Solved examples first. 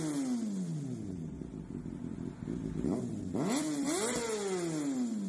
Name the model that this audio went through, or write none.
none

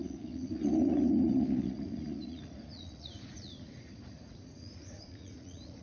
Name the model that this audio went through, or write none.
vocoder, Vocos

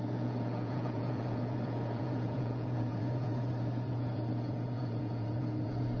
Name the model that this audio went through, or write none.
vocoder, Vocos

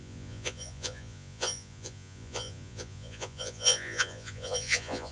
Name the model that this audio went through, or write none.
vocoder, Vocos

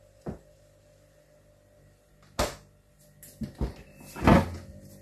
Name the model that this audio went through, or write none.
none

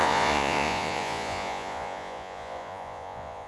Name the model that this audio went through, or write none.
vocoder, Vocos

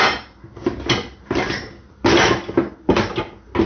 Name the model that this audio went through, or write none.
none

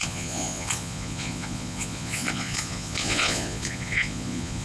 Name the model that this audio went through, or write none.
vocoder, Vocos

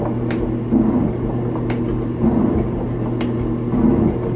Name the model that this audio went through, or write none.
none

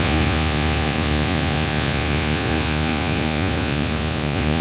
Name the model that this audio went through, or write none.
vocoder, Vocos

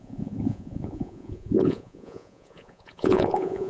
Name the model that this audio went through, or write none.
vocoder, Vocos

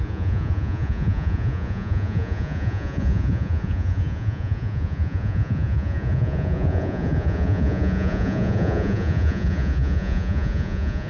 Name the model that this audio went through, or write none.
vocoder, Vocos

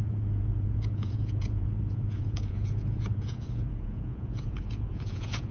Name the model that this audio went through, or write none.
vocoder, Vocos